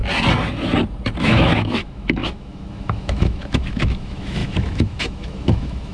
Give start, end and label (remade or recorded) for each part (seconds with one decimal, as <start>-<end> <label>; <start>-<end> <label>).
0.0-1.2 recorded; 1.2-5.9 remade